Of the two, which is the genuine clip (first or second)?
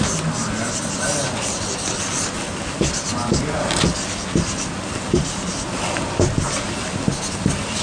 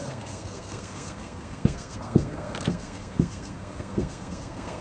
first